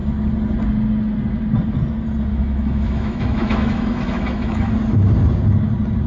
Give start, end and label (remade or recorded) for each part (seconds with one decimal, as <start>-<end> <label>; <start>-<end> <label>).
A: 0.0-2.3 recorded; 2.3-4.7 remade; 4.7-6.1 recorded